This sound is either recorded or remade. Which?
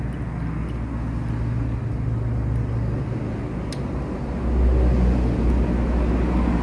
recorded